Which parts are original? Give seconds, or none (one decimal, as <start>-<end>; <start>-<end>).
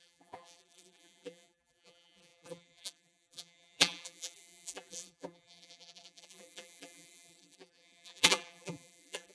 none